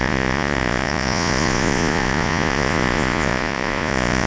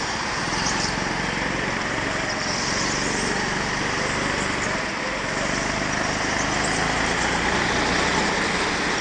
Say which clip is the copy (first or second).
first